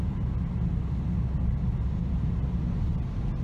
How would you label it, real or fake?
real